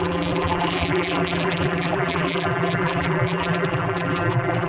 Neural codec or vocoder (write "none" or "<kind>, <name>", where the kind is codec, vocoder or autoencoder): vocoder, BigVGAN v2